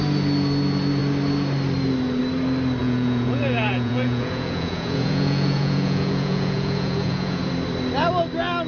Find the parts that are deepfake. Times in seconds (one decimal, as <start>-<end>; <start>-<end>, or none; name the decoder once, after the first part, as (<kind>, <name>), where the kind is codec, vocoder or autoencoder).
2.8-7.5 (vocoder, Vocos)